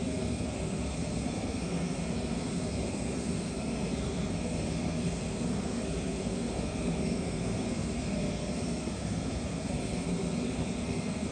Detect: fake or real fake